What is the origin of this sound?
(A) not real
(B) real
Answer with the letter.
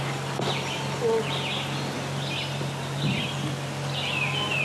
B